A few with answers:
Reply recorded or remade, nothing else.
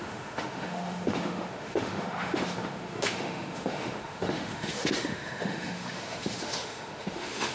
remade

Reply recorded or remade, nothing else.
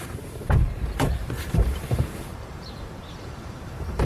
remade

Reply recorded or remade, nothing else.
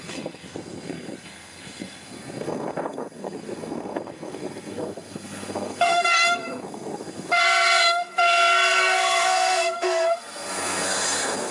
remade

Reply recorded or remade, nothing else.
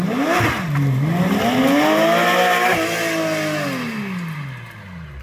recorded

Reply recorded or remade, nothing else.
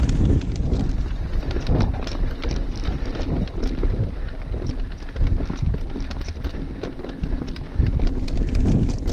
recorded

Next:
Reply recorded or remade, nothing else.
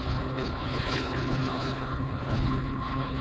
remade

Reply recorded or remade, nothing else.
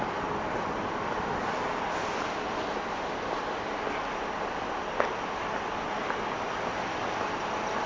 recorded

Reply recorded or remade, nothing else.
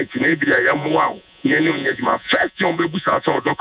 remade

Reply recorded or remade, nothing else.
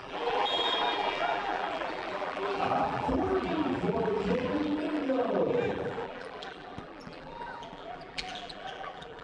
remade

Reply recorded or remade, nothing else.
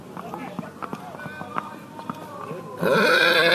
recorded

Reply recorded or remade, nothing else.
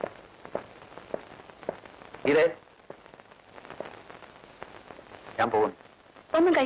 recorded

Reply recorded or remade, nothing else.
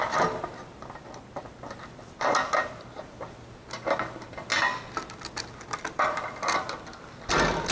recorded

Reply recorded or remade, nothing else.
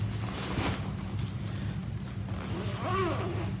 recorded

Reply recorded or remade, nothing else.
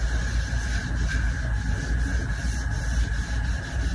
recorded